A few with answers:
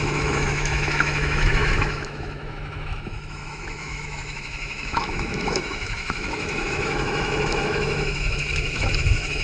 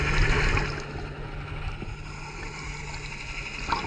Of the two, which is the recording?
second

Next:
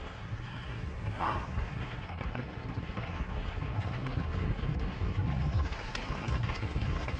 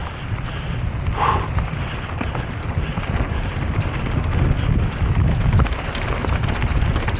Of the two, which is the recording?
second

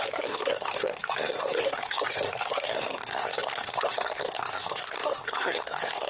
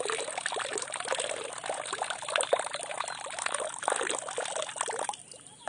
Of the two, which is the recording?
second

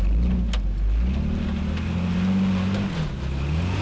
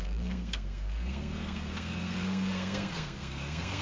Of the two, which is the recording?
first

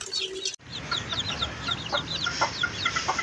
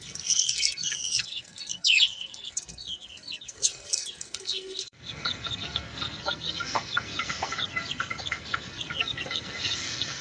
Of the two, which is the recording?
first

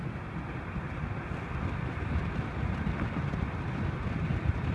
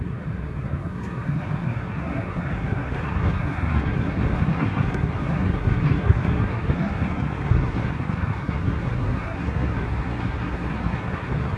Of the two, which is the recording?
first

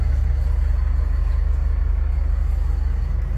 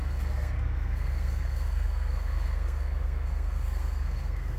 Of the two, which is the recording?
first